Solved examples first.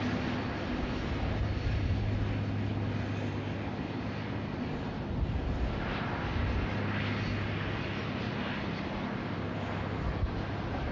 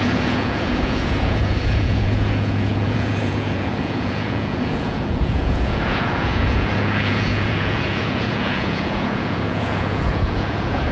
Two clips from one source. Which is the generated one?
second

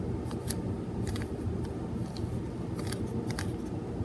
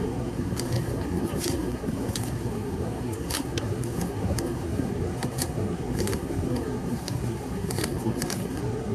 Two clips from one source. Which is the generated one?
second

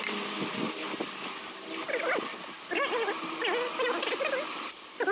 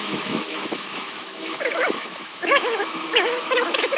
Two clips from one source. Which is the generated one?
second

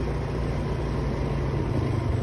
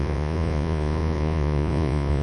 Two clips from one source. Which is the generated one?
second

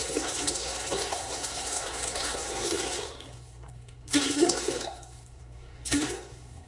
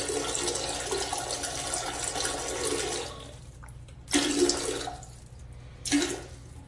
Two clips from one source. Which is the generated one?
first